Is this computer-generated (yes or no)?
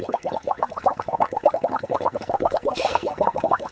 yes